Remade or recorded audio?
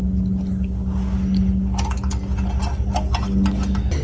recorded